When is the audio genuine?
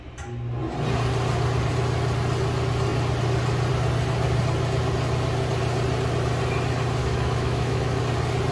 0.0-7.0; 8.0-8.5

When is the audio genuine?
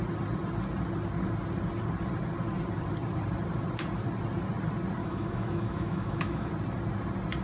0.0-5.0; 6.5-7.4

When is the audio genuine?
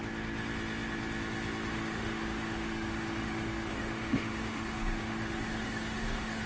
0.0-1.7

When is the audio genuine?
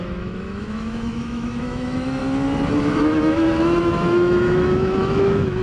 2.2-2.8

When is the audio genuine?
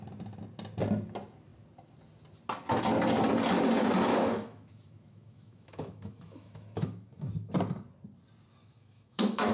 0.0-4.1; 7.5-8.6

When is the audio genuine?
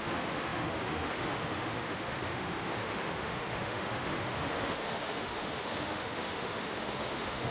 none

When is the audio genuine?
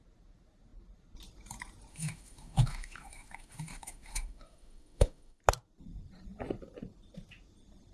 0.0-1.9; 5.4-7.9